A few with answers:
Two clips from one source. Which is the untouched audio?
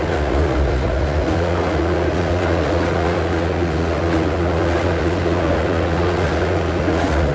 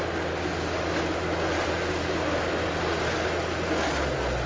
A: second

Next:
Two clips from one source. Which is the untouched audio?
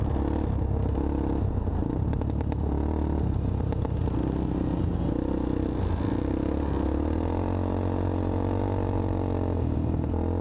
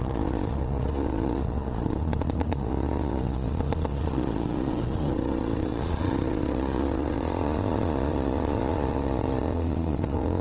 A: first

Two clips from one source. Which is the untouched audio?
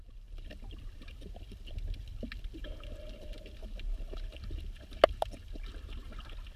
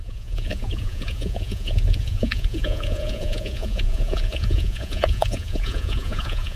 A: first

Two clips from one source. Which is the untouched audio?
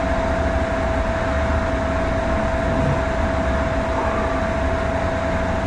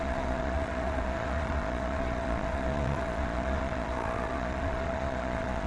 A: first